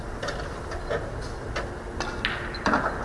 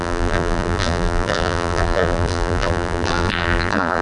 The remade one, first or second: second